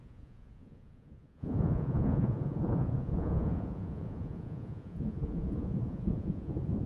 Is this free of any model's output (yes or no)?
no